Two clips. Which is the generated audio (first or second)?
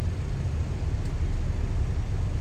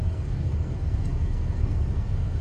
second